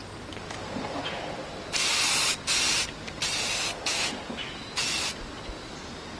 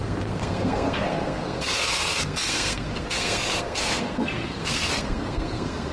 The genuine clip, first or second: first